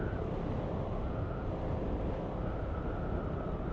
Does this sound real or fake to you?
real